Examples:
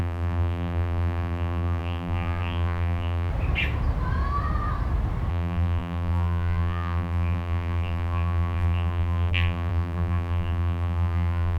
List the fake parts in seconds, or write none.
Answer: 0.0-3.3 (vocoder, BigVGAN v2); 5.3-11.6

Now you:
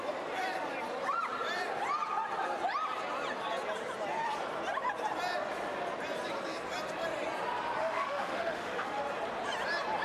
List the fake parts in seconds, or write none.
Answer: 7.8-9.0 (autoencoder, DAC-VAE)

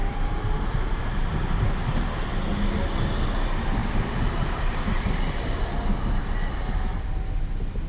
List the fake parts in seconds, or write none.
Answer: 0.0-1.0 (vocoder, BigVGAN v2); 3.8-5.7

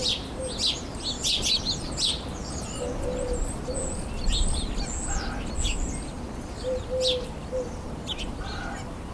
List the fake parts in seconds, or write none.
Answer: none

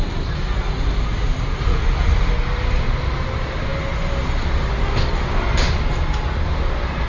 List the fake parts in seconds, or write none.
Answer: none

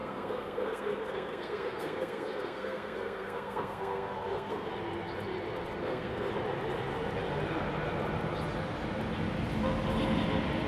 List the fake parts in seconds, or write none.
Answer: 0.0-4.7 (codec, SNAC); 5.8-6.3

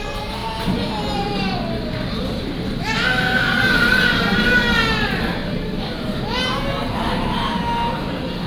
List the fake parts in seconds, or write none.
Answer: 5.4-6.6 (vocoder, BigVGAN v2)

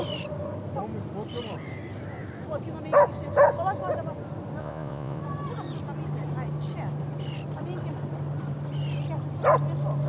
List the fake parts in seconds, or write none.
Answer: 4.6-5.2 (vocoder, Vocos)